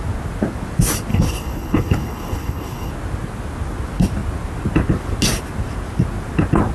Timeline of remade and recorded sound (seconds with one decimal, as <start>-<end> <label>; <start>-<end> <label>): 0.0-1.1 recorded; 1.1-2.9 remade; 2.9-6.7 recorded